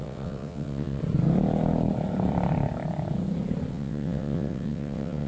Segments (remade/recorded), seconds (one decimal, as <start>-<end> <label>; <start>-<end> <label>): 0.0-1.0 remade; 1.0-3.7 recorded; 3.7-5.3 remade